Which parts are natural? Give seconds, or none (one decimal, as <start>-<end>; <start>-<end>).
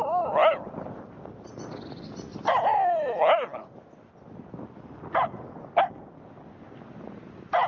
0.0-7.7